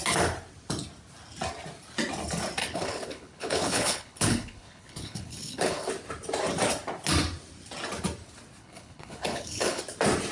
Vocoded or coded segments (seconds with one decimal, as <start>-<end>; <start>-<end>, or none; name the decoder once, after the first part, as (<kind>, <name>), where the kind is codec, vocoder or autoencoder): 2.6-5.9 (codec, HILCodec); 8.6-9.8